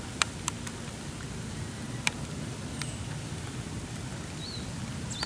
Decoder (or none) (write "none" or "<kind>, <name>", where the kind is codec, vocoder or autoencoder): none